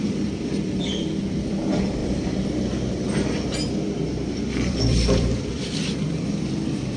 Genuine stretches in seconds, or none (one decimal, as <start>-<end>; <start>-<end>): none